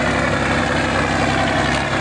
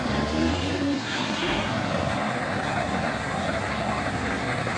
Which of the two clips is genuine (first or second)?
first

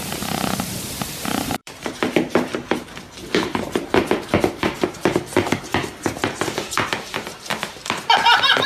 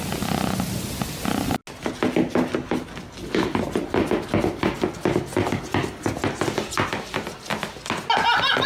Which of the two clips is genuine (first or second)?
second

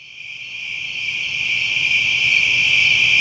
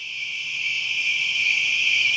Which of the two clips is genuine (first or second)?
first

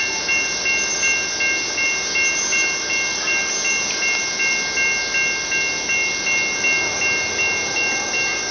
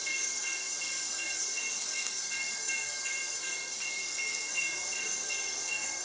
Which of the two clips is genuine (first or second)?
first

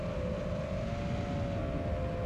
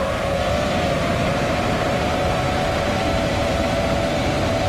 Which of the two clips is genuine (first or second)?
first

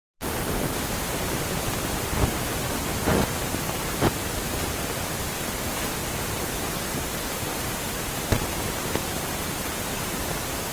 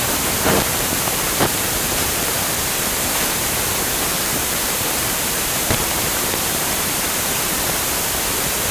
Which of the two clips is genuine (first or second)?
first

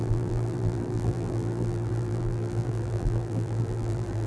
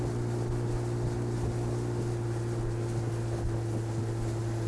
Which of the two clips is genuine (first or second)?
second